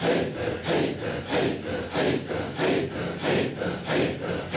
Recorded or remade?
recorded